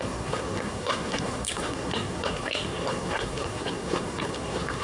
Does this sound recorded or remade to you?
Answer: remade